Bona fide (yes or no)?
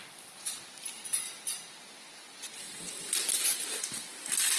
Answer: yes